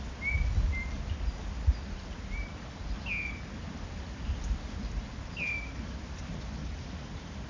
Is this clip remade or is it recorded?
recorded